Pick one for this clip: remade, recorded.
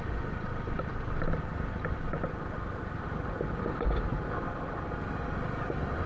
recorded